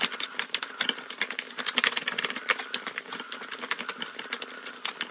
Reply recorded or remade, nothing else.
recorded